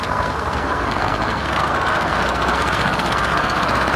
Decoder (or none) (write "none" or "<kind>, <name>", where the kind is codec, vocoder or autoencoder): codec, SNAC